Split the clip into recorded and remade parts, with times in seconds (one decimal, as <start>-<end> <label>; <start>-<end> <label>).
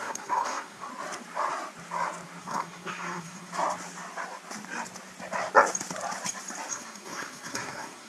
0.0-0.9 remade; 0.9-2.4 recorded; 2.4-3.5 remade; 3.5-6.7 recorded; 6.7-8.1 remade